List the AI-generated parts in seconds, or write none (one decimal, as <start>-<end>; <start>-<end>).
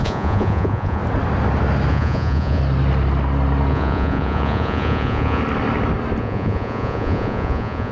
0.0-1.0; 1.9-2.6; 3.7-5.4; 6.2-7.9